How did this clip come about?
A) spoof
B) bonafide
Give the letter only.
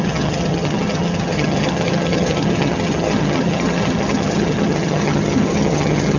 A